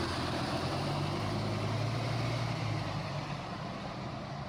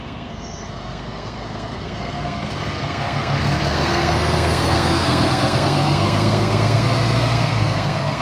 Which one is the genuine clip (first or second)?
first